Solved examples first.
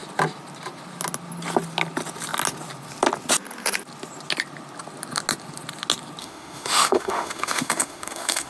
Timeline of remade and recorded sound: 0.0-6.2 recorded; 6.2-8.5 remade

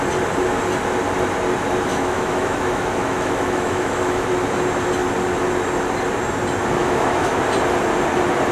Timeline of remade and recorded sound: 0.0-1.9 recorded; 1.9-4.3 remade; 4.3-6.8 recorded; 6.8-7.4 remade; 7.4-8.5 recorded

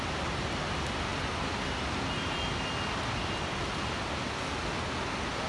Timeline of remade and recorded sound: 0.0-5.5 recorded

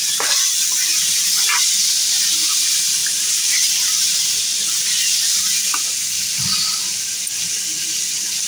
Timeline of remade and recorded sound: 0.0-8.5 recorded

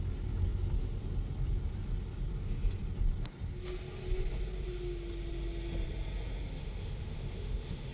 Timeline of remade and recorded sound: 0.0-6.6 recorded; 6.6-7.9 remade

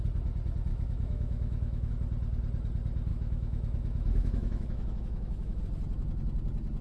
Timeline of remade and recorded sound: 0.0-0.7 recorded; 0.7-1.9 remade; 1.9-3.1 recorded; 3.1-5.6 remade; 5.6-6.8 recorded

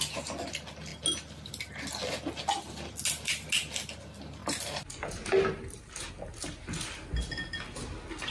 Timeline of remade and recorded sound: 0.0-8.3 recorded